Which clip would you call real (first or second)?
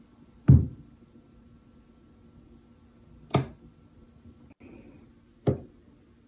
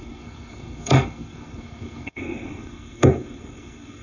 first